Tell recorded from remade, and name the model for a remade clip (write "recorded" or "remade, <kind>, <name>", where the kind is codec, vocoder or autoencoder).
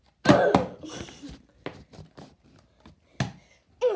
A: recorded